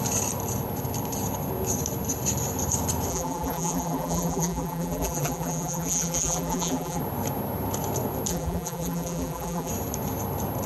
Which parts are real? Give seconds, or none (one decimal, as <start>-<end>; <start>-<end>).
0.0-3.1; 7.0-8.3; 9.7-10.7